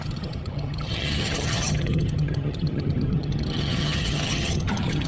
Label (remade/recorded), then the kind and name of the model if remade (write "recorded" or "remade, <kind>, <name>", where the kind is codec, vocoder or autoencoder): remade, vocoder, HiFi-GAN